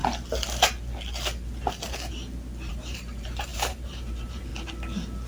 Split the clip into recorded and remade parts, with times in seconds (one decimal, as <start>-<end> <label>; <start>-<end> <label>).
0.0-2.7 recorded; 2.7-4.5 remade; 4.5-5.3 recorded